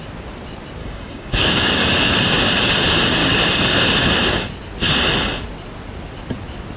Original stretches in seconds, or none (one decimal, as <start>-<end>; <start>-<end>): 0.0-0.8; 2.0-3.2; 3.9-6.8